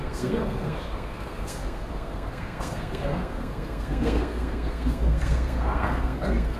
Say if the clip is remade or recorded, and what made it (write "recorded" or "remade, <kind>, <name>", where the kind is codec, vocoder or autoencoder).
remade, codec, SNAC